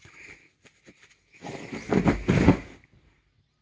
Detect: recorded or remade recorded